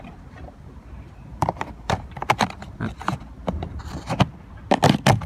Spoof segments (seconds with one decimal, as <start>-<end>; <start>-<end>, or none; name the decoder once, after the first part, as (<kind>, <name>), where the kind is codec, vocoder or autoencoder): 1.3-4.5 (vocoder, BigVGAN v2)